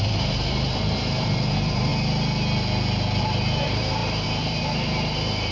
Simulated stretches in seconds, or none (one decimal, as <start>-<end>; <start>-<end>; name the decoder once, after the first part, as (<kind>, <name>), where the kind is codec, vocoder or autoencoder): 0.0-1.9 (vocoder, BigVGAN v2); 3.2-5.5